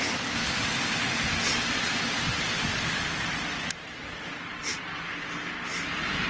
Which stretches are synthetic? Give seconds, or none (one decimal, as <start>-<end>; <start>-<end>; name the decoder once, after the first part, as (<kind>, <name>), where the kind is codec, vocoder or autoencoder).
none